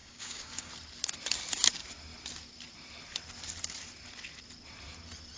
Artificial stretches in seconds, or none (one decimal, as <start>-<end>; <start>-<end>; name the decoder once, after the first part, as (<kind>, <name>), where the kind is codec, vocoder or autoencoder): 0.0-0.7 (codec, DAC)